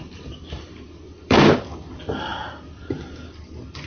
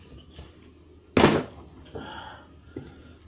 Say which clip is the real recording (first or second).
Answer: second